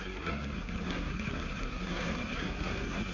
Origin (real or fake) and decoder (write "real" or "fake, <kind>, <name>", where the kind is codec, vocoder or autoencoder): fake, codec, SNAC